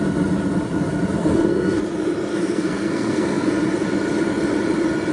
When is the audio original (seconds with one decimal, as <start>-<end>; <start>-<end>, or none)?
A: 0.0-1.2; 1.8-2.3; 3.5-5.1